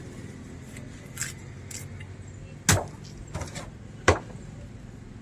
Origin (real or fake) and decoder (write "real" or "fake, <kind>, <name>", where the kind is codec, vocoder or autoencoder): real